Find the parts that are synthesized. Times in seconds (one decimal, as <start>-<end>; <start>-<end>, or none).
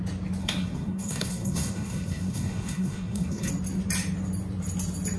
0.4-3.5